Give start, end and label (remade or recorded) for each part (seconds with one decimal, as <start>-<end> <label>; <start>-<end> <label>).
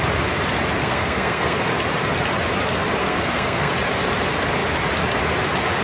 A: 0.0-0.8 recorded; 0.8-1.6 remade; 1.6-3.0 recorded; 3.0-3.7 remade; 3.7-5.8 recorded